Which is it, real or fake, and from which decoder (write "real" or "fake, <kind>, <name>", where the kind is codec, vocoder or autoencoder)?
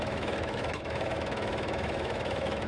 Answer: fake, autoencoder, DAC-VAE